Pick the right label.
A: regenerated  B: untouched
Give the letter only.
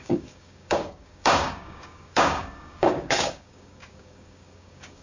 A